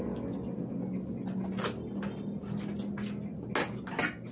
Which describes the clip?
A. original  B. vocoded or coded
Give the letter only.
A